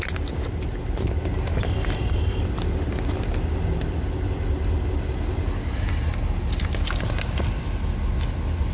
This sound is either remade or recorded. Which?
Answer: recorded